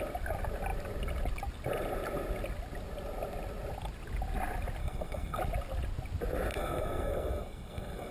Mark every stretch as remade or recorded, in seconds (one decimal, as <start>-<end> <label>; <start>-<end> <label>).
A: 0.0-4.8 recorded; 4.8-5.4 remade; 5.4-6.5 recorded; 6.5-8.1 remade